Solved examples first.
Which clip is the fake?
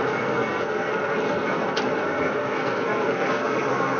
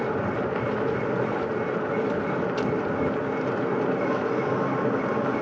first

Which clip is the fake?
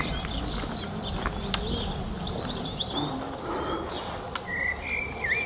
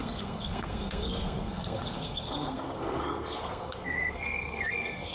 second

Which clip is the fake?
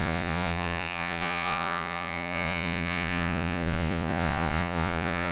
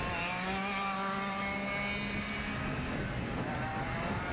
first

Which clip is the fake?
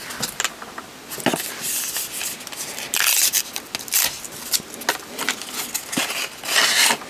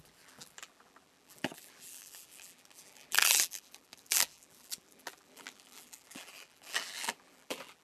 second